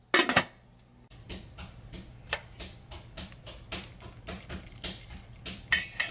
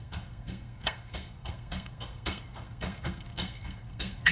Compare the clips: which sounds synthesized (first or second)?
second